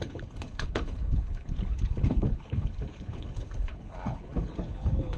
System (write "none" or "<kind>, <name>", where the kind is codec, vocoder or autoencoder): codec, HILCodec